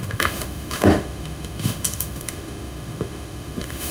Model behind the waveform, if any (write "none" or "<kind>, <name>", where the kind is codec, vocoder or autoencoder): autoencoder, DAC-VAE